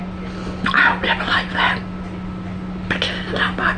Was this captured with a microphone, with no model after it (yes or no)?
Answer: yes